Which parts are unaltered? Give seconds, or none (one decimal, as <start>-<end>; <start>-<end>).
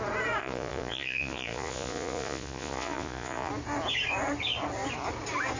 0.0-0.4; 3.5-5.6